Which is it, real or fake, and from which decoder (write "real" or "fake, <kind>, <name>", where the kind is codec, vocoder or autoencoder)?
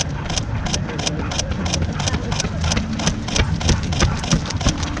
real